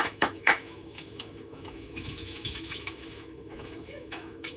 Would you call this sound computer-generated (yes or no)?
yes